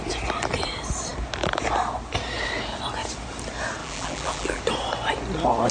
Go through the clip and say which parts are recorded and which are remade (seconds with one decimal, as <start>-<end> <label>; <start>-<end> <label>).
0.0-3.8 recorded; 3.8-4.6 remade; 4.6-5.7 recorded